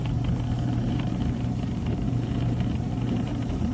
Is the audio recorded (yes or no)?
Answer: no